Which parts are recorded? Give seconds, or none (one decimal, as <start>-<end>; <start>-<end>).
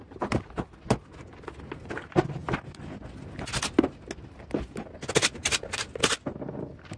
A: 0.0-7.0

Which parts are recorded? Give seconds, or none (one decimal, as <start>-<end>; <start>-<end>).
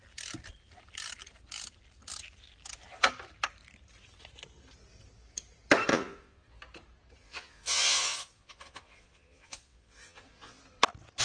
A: 0.0-5.9; 6.6-7.2; 10.6-11.2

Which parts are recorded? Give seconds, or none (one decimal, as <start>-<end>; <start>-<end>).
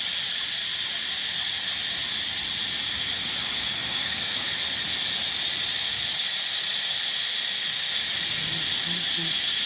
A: 0.0-3.4; 4.4-9.7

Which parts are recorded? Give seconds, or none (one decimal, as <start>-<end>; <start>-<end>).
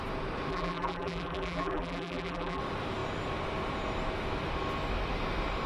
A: 0.0-0.5; 2.6-5.7